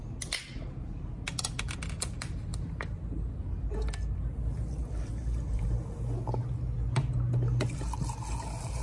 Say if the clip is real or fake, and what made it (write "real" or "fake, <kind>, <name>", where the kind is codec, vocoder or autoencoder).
real